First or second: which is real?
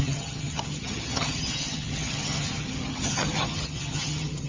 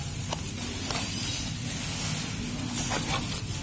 second